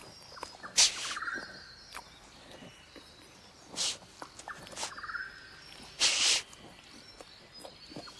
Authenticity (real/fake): real